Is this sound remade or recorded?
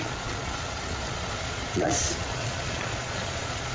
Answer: remade